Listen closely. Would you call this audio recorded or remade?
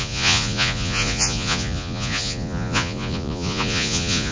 remade